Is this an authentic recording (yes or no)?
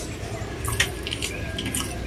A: no